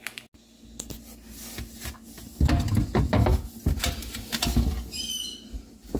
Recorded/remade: recorded